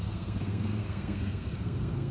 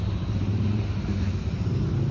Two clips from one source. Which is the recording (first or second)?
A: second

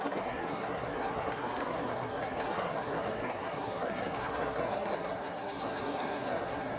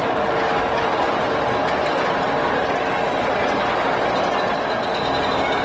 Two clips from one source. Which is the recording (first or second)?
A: second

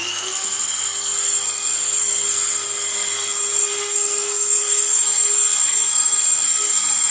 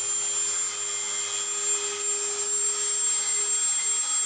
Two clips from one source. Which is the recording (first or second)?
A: second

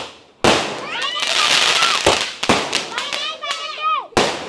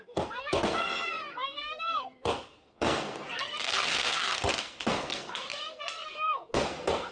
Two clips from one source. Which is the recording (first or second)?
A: first